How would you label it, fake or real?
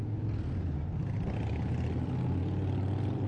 real